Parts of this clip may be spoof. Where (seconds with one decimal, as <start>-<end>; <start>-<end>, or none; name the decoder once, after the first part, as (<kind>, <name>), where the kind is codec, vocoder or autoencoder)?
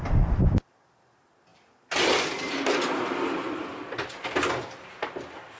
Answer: none